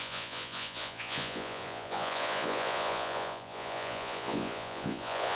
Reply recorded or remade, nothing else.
remade